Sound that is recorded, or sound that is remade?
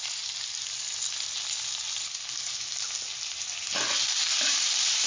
recorded